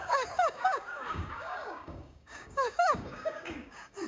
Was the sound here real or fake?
fake